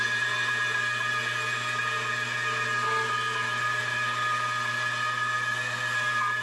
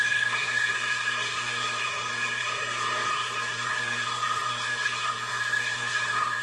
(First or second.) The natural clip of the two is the first